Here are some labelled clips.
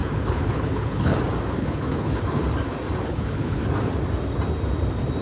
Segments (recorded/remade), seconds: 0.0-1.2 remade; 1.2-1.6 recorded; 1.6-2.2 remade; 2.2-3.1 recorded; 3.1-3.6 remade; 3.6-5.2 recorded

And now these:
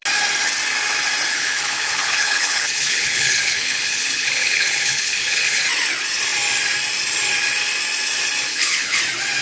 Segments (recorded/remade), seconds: 0.0-1.3 recorded; 1.3-5.6 remade; 5.6-8.5 recorded; 8.5-9.0 remade; 9.0-9.4 recorded

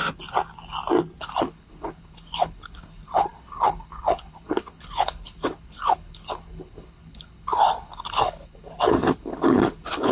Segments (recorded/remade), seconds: 0.0-1.2 recorded; 1.2-10.1 remade